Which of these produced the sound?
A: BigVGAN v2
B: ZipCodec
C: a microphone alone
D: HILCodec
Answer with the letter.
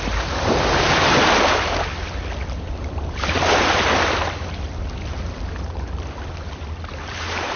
C